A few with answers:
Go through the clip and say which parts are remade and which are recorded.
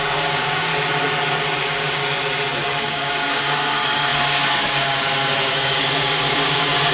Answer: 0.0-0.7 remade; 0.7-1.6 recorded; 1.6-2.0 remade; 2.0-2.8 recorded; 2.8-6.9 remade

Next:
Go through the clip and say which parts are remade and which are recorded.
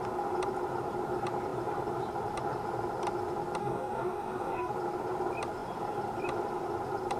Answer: 0.0-3.6 recorded; 3.6-4.7 remade; 4.7-7.2 recorded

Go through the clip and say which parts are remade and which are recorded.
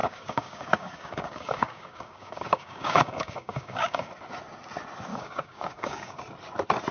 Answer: 0.0-4.1 remade; 4.1-5.1 recorded; 5.1-6.2 remade; 6.2-6.9 recorded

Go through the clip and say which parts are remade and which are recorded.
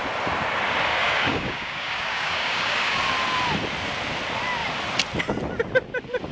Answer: 0.0-0.9 recorded; 0.9-3.0 remade; 3.0-6.3 recorded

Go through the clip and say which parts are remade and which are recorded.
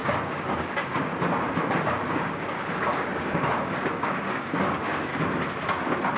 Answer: 0.0-1.1 remade; 1.1-2.1 recorded; 2.1-5.1 remade; 5.1-6.2 recorded